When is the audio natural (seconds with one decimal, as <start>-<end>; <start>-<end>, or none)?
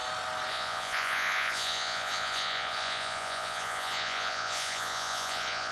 0.0-0.5